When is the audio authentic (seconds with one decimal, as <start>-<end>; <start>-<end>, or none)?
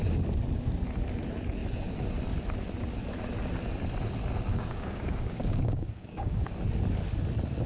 0.0-4.5; 6.5-7.7